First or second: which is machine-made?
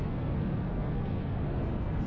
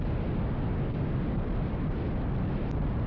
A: first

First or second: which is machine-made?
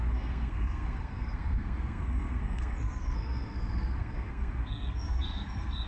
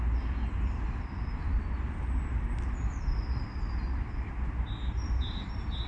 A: first